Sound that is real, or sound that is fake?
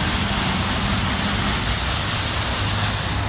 real